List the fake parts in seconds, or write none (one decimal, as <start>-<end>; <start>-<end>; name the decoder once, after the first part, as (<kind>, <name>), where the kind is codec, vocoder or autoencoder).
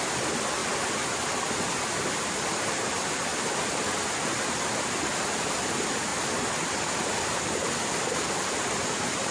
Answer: none